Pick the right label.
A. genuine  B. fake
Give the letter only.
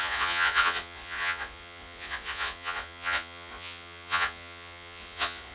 B